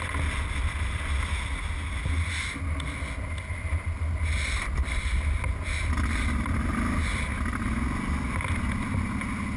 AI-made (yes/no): no